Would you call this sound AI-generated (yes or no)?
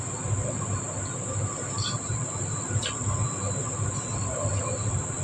no